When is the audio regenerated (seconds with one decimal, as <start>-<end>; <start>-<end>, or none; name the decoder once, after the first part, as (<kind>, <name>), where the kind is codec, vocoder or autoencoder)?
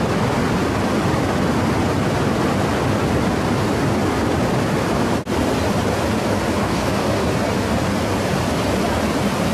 6.6-7.1 (codec, DAC)